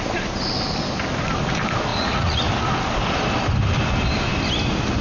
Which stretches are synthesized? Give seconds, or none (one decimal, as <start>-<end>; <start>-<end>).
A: 1.9-2.4